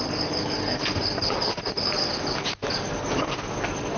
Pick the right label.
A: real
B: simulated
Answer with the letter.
A